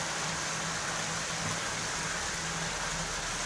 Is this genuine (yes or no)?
yes